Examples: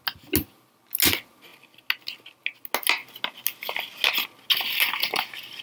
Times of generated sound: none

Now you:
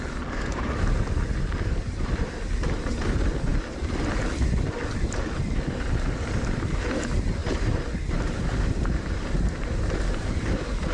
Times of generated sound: 0.5-1.0 (vocoder, BigVGAN v2); 7.4-9.7

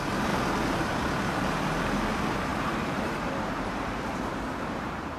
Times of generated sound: 0.0-1.0 (vocoder, BigVGAN v2); 2.1-5.2

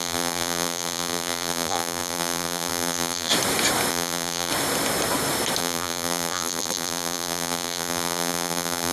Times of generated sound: 0.0-3.3 (vocoder, BigVGAN v2); 3.9-4.5; 5.6-8.9

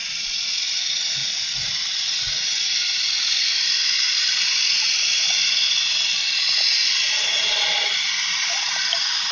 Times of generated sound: none

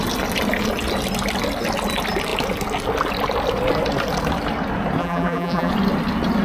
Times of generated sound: 5.0-5.7 (vocoder, BigVGAN v2)

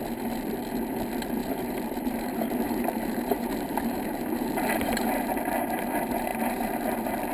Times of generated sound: 1.4-5.8 (vocoder, BigVGAN v2); 6.3-7.3

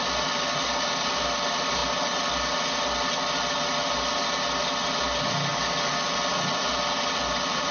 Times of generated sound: none